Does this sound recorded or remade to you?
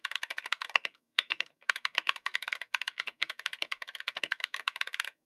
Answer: remade